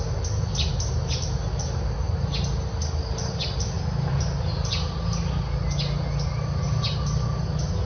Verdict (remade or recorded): recorded